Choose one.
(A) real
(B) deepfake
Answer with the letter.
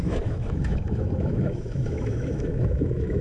B